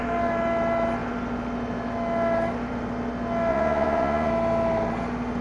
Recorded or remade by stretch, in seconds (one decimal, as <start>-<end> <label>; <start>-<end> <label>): 0.0-3.5 recorded; 3.5-4.3 remade; 4.3-5.4 recorded